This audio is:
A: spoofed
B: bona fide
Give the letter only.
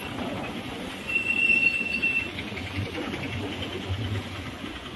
A